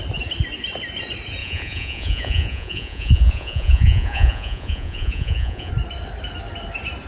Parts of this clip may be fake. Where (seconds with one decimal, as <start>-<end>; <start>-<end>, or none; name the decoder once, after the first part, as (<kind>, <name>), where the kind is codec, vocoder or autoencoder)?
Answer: 1.4-5.7 (vocoder, Vocos)